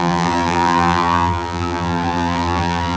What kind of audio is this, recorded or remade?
remade